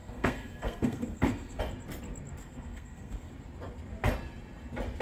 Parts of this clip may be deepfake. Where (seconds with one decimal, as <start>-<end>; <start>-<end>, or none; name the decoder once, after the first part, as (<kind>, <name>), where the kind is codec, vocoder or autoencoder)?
0.0-1.6 (codec, SNAC); 2.4-3.3